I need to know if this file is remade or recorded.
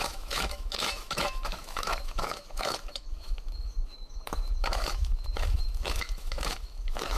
remade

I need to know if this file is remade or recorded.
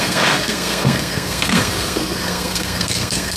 remade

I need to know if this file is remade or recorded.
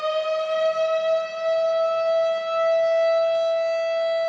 recorded